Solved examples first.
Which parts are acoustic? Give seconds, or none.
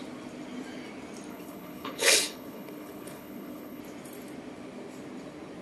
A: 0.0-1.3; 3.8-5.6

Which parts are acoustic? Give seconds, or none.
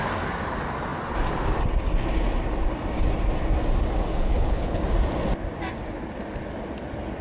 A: 0.0-4.1; 4.8-7.2